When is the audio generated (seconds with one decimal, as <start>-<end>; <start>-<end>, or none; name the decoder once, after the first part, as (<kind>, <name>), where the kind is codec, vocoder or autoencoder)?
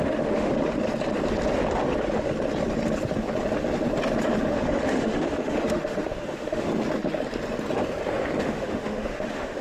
0.0-0.5 (autoencoder, DAC-VAE); 4.5-6.7; 8.4-9.6